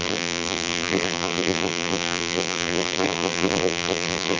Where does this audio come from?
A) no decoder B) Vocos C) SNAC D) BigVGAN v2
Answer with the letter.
D